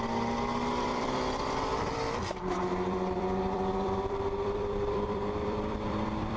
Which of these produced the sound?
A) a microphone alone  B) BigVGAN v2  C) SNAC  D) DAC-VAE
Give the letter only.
B